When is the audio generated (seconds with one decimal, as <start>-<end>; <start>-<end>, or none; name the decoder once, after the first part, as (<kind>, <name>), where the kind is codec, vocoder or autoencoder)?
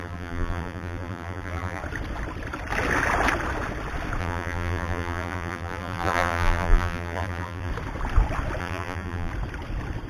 0.0-1.8 (vocoder, BigVGAN v2); 4.2-7.7; 8.6-9.3